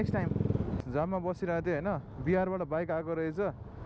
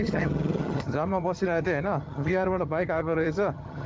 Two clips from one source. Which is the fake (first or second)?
second